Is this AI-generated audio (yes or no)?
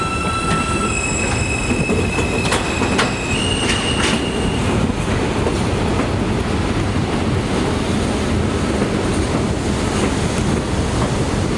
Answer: no